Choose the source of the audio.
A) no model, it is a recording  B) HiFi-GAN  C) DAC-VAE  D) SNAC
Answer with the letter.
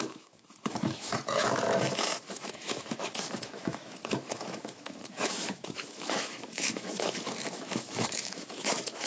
C